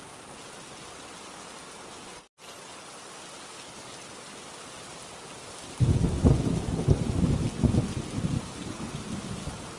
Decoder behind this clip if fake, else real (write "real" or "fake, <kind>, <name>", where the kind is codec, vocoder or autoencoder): real